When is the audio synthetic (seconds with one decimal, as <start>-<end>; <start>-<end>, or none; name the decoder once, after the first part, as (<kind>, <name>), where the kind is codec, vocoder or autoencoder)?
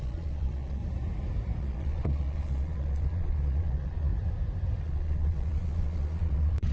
0.0-0.8 (vocoder, Vocos); 1.6-4.1; 4.8-6.7